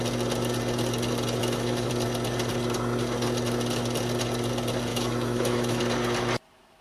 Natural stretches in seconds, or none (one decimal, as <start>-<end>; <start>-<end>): 0.0-1.4; 1.9-4.9; 5.8-6.8